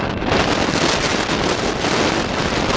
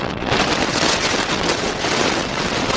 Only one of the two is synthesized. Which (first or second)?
second